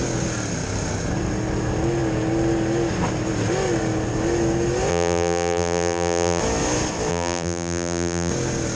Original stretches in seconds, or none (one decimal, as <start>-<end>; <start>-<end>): 0.0-4.9; 6.4-7.1; 8.3-8.8